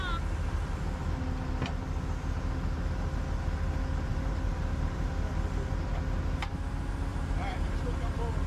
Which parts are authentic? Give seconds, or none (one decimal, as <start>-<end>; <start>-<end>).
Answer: 0.0-4.1; 5.1-7.1; 7.7-8.5